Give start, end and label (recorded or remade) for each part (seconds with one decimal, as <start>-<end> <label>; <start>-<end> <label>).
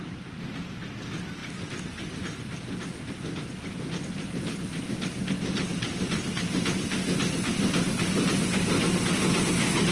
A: 0.0-9.9 recorded